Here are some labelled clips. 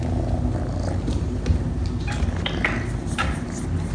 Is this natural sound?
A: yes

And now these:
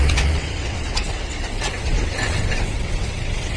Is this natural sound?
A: no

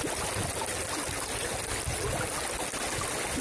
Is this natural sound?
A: yes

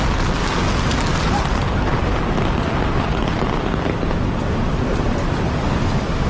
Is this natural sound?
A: yes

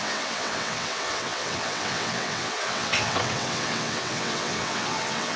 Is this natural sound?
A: no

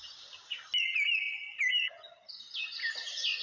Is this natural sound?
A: yes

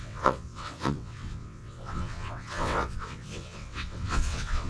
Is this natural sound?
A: no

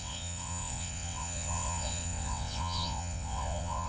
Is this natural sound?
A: no